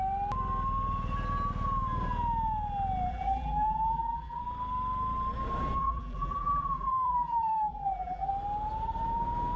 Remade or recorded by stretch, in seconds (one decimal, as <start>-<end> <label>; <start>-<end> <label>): 0.0-3.1 recorded; 3.1-4.4 remade; 4.4-5.8 recorded; 5.8-8.3 remade; 8.3-9.6 recorded